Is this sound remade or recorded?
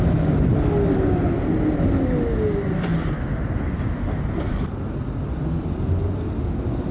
recorded